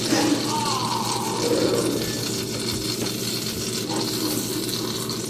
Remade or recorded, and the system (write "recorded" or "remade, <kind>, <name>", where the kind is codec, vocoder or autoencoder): recorded